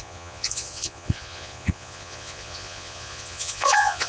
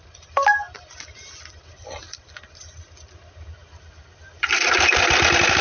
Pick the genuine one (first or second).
second